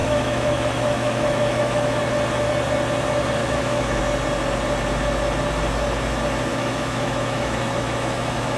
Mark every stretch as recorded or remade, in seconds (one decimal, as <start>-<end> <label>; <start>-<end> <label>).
0.0-2.0 remade; 2.0-3.4 recorded; 3.4-4.0 remade; 4.0-6.5 recorded; 6.5-8.6 remade